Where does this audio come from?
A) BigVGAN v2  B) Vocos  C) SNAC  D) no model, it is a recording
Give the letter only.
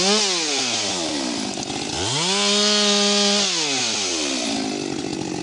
D